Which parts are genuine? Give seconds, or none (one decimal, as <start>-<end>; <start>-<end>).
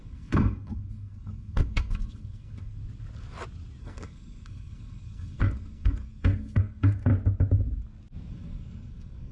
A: 2.8-3.8; 7.1-8.3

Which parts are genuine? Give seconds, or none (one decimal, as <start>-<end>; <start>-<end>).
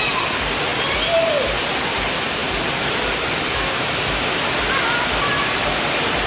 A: 0.0-6.3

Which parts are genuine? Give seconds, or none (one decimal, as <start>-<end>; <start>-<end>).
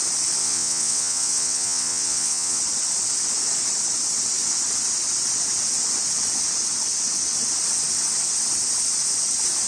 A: 0.0-0.4; 2.6-9.7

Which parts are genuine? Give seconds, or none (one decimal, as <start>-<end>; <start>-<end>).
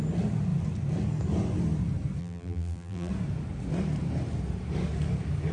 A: 0.0-2.2; 3.1-5.5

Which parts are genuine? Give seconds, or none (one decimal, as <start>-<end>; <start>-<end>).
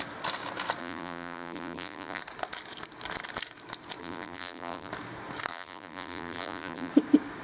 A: 0.0-0.8; 2.2-4.0; 4.9-5.5; 6.9-7.4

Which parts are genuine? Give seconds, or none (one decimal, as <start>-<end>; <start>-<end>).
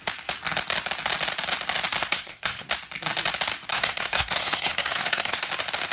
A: 0.0-2.0; 2.7-3.7; 5.5-5.9